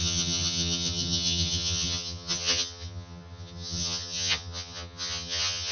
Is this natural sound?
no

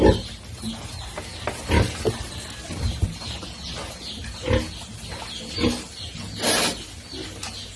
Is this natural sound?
yes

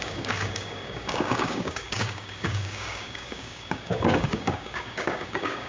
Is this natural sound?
no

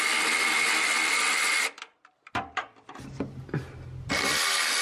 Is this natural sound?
yes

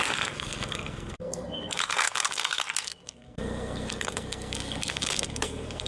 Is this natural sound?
no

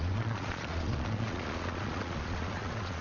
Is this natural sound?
no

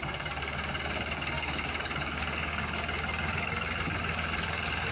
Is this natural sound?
no